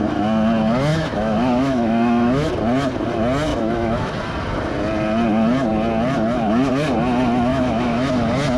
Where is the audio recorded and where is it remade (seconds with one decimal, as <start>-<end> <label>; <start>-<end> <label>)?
0.0-0.9 recorded; 0.9-2.5 remade; 2.5-3.5 recorded; 3.5-4.1 remade; 4.1-7.5 recorded; 7.5-8.1 remade; 8.1-8.6 recorded

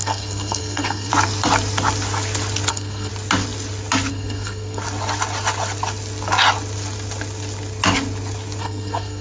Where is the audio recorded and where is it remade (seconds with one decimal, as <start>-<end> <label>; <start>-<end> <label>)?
0.0-1.1 remade; 1.1-2.7 recorded; 2.7-3.1 remade; 3.1-4.1 recorded; 4.1-4.8 remade; 4.8-8.6 recorded; 8.6-9.2 remade

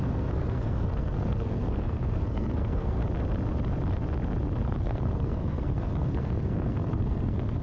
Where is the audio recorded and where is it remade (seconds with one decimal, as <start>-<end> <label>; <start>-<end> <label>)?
0.0-3.0 remade; 3.0-4.6 recorded; 4.6-7.6 remade

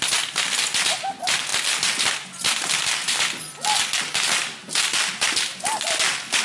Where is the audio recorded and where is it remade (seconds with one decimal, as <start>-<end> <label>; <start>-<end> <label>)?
0.0-6.4 recorded

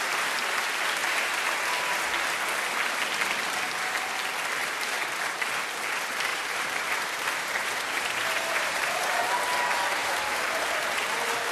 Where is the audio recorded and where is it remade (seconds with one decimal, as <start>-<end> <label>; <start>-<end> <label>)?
0.0-1.0 recorded; 1.0-1.7 remade; 1.7-4.6 recorded; 4.6-5.2 remade; 5.2-6.3 recorded; 6.3-9.3 remade; 9.3-10.0 recorded; 10.0-10.6 remade; 10.6-11.5 recorded

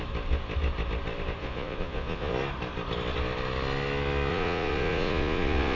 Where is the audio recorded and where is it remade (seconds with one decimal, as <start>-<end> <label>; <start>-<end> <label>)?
0.0-1.4 recorded; 1.4-2.3 remade; 2.3-4.3 recorded; 4.3-5.8 remade

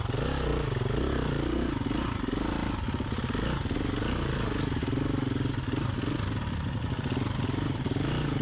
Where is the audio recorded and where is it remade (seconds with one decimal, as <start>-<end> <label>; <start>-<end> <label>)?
0.0-4.8 recorded; 4.8-5.5 remade; 5.5-8.4 recorded